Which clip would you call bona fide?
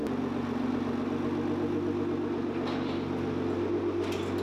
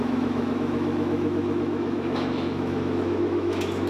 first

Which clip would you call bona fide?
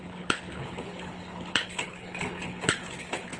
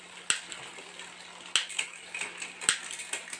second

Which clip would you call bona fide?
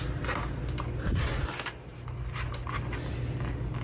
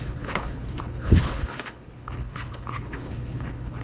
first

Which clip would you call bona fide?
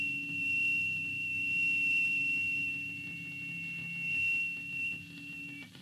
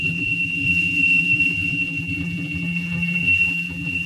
first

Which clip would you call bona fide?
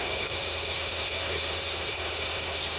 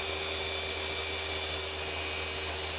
second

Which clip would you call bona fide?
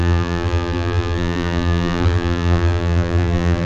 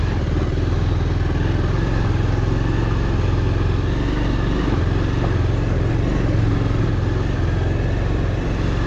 second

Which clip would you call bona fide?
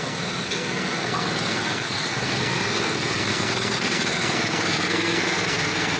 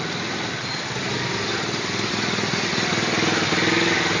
second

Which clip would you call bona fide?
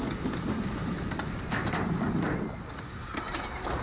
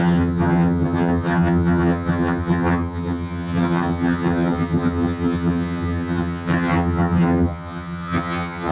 first